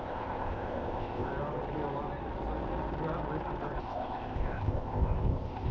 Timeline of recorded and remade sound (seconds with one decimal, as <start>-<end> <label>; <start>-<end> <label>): 0.0-1.3 remade; 1.3-3.8 recorded; 3.8-5.7 remade